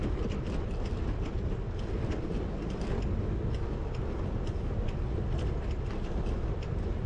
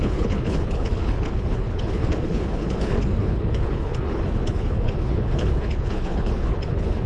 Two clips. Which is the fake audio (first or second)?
second